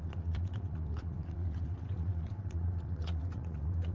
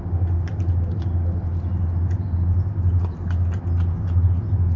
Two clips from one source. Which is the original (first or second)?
second